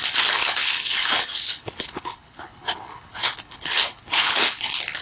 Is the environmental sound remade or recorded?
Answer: remade